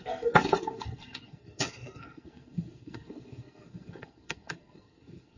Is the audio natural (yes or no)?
no